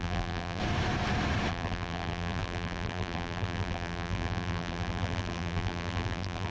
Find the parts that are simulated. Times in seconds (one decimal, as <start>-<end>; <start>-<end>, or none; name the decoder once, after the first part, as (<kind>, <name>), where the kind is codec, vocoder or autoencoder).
0.0-0.6 (vocoder, BigVGAN v2); 1.5-6.5